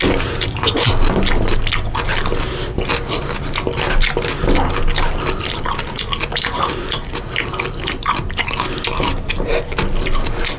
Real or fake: real